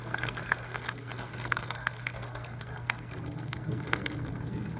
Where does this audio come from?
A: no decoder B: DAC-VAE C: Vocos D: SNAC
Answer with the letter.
D